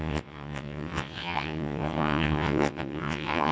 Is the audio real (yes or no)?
no